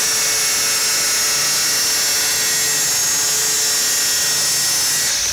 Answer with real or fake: real